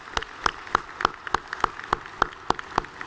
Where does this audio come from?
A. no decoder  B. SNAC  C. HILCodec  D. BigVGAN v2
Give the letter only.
A